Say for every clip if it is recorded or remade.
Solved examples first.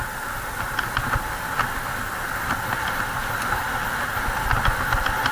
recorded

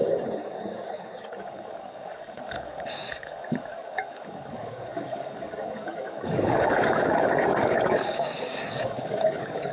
remade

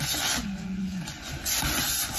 remade